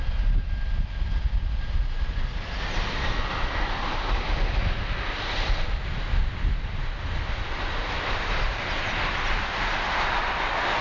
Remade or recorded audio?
recorded